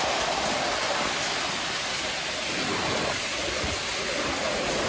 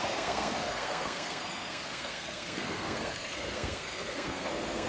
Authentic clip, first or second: first